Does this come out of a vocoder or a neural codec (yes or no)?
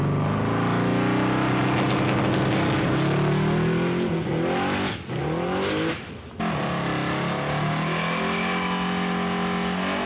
no